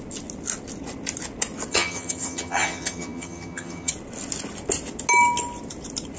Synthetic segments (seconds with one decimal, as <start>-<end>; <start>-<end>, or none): 1.7-3.9